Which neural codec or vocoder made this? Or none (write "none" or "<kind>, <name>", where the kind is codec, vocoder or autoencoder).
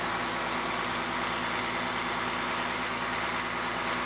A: none